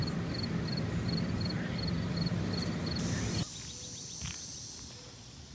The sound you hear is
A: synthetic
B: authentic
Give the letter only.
B